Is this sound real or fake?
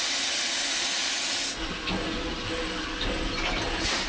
real